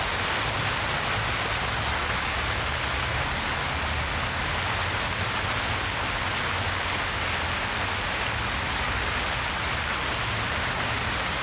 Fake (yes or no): no